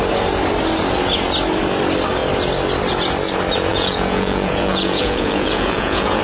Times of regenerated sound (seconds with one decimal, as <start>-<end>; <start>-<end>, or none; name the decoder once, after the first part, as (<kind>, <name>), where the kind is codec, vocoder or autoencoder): 3.7-6.2 (vocoder, Vocos)